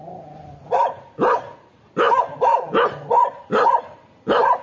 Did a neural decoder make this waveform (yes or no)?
no